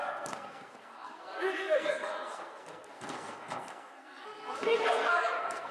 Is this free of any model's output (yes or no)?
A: no